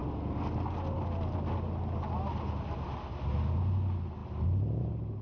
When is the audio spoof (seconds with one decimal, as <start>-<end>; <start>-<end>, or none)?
none